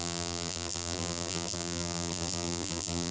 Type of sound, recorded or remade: remade